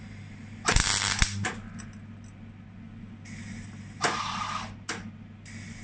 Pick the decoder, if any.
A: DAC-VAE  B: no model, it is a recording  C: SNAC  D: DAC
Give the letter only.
B